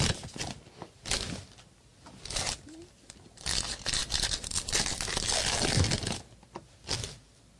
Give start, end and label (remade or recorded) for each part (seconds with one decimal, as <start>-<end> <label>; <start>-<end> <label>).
0.0-7.6 recorded

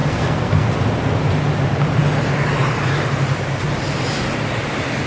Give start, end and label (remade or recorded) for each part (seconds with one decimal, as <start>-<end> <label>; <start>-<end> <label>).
0.0-0.7 remade; 0.7-5.1 recorded

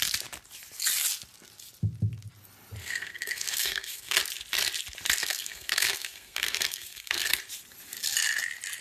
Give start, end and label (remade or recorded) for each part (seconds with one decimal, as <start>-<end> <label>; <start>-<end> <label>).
0.0-2.8 recorded; 2.8-4.2 remade; 4.2-5.2 recorded; 5.2-7.4 remade; 7.4-8.8 recorded

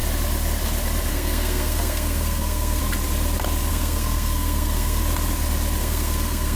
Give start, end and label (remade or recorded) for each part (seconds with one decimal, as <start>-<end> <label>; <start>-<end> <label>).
0.0-1.1 recorded; 1.1-2.8 remade; 2.8-3.7 recorded; 3.7-5.0 remade; 5.0-5.8 recorded; 5.8-6.6 remade

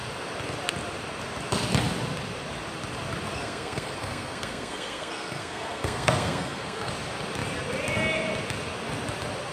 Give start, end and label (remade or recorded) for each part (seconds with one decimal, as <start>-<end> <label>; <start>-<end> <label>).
0.0-3.4 recorded; 3.4-6.9 remade; 6.9-9.5 recorded

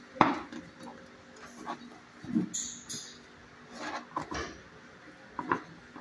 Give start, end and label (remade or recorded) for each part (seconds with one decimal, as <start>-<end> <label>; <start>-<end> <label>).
0.0-6.0 recorded

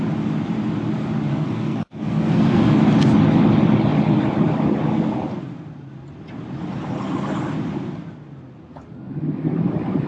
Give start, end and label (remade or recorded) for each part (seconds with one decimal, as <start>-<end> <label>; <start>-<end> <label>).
0.0-1.3 recorded; 1.3-2.7 remade; 2.7-10.1 recorded

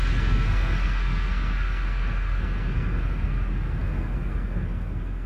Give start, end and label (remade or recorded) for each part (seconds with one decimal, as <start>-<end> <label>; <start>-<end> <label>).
0.0-5.3 remade